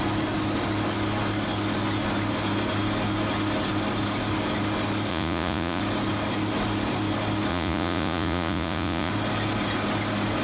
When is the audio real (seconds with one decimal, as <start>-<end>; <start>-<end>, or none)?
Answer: 0.0-5.1; 5.8-7.5; 9.1-10.4